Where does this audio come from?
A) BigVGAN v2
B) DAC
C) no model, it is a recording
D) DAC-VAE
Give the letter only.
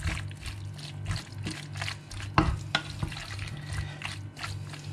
C